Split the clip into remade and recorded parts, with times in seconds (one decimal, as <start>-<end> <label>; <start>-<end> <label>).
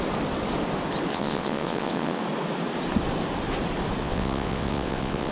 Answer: 0.0-1.1 recorded; 1.1-2.2 remade; 2.2-4.0 recorded; 4.0-5.3 remade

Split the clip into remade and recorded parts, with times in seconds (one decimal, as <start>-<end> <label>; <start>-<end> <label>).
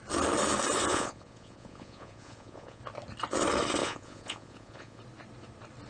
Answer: 0.0-0.9 recorded; 0.9-2.8 remade; 2.8-3.8 recorded; 3.8-5.0 remade; 5.0-5.9 recorded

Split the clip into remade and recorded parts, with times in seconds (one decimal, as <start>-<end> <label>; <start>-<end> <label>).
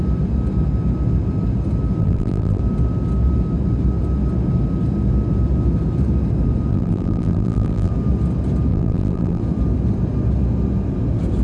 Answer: 0.0-2.0 recorded; 2.0-2.6 remade; 2.6-6.7 recorded; 6.7-7.9 remade; 7.9-8.7 recorded; 8.7-9.4 remade; 9.4-11.4 recorded